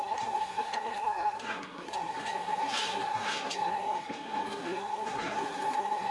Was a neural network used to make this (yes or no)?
yes